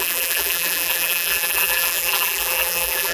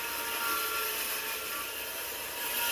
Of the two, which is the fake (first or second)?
first